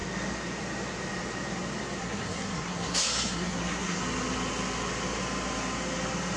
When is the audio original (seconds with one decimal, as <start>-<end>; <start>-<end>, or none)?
0.0-2.0; 4.0-6.4